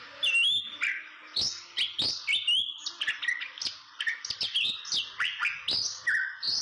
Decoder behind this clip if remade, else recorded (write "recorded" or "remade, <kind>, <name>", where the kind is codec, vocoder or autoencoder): recorded